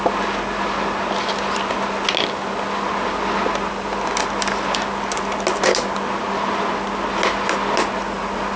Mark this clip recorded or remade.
recorded